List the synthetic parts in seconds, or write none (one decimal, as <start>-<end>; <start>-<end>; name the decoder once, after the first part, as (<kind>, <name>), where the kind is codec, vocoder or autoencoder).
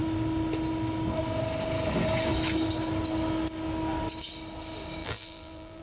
5.0-5.8 (vocoder, BigVGAN v2)